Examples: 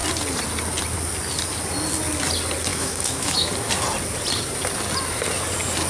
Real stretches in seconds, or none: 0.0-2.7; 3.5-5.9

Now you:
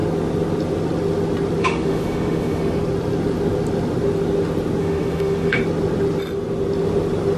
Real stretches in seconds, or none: 0.0-1.6; 2.8-4.8; 5.6-7.4

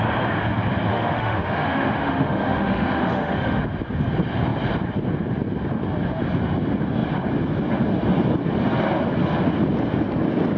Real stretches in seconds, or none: 0.0-0.9; 3.6-10.6

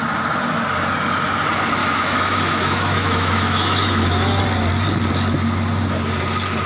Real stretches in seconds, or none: 0.0-1.8; 4.4-6.7

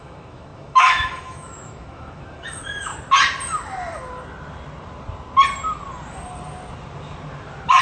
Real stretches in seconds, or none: 2.9-7.8

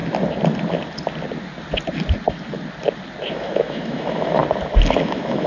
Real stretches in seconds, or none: 0.0-3.3; 4.4-5.0

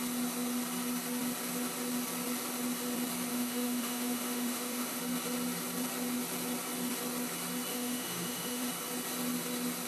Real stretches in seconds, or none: 0.0-3.3; 5.0-7.7; 8.7-9.9